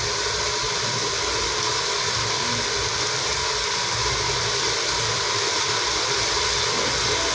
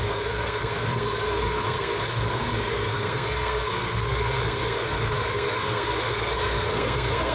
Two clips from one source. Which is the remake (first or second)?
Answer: second